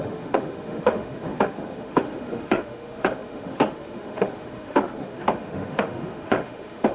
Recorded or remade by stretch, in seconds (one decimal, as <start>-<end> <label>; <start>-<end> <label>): 0.0-6.9 remade